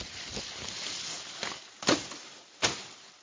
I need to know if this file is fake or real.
real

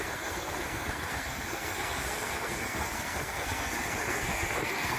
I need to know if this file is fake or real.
fake